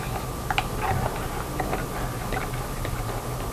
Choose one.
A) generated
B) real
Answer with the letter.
B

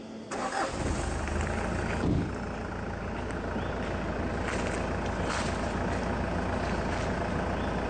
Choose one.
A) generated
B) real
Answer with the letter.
B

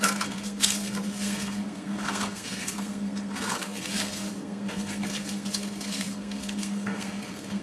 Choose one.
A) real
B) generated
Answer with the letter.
B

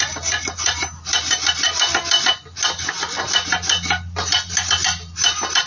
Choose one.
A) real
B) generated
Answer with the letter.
A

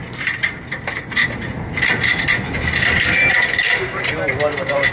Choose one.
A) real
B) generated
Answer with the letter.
A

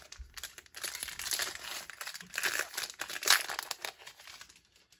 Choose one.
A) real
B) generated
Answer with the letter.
A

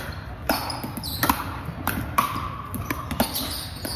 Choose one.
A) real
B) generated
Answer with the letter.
A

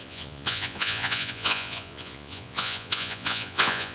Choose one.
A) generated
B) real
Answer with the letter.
A